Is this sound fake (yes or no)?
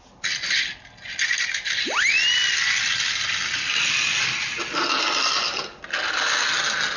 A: no